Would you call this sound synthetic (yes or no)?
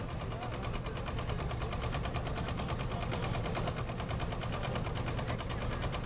no